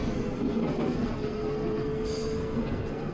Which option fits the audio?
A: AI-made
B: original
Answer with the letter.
A